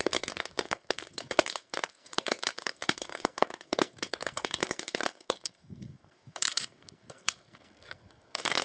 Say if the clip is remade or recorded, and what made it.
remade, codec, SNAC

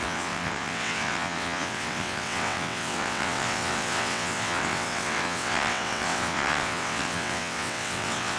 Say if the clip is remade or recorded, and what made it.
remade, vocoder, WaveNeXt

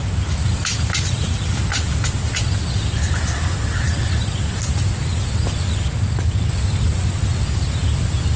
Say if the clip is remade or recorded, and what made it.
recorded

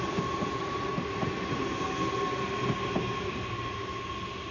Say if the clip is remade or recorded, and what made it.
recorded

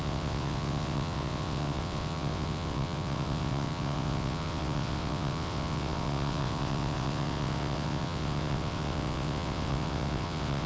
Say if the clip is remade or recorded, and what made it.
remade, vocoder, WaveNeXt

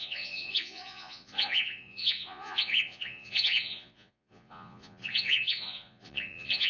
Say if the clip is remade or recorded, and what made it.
remade, vocoder, Vocos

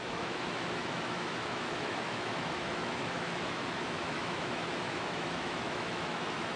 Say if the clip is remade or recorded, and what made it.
remade, autoencoder, DAC-VAE